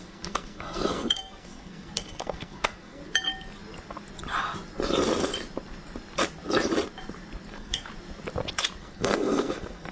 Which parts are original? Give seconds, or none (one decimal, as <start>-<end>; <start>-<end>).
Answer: 3.0-7.5; 7.9-8.8